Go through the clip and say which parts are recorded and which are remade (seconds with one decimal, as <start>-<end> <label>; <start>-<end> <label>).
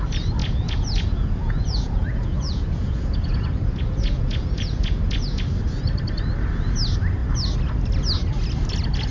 0.0-0.4 recorded; 0.4-5.4 remade; 5.4-9.1 recorded